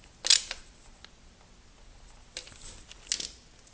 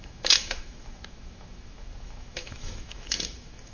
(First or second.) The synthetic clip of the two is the second